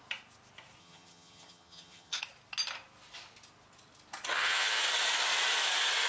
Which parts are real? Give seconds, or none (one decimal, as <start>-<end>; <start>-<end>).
0.0-0.8; 2.2-4.3; 4.8-6.1